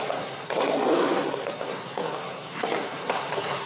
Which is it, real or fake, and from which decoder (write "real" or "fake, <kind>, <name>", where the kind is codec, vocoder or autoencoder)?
fake, codec, SNAC